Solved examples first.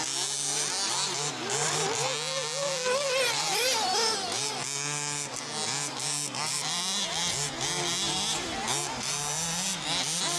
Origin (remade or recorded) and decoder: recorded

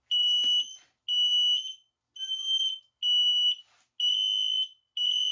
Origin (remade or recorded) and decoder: recorded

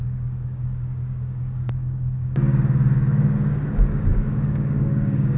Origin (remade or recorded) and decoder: remade, codec, DAC